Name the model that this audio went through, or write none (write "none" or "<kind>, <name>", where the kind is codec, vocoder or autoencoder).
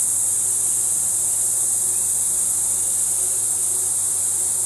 none